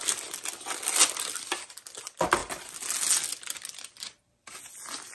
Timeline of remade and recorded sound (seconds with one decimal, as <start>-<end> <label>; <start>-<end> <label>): 0.0-5.1 recorded